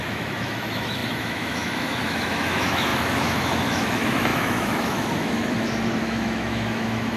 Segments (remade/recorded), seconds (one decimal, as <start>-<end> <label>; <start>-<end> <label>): 0.0-7.2 remade